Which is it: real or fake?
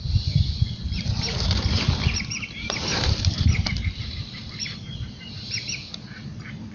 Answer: fake